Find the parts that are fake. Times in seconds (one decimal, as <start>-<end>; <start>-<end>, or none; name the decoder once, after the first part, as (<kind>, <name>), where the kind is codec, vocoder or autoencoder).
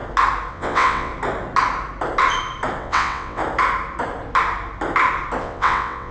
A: 0.5-1.1 (vocoder, WaveNeXt); 2.8-3.4; 5.4-6.1